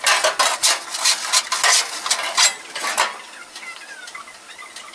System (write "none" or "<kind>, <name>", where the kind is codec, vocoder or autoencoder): none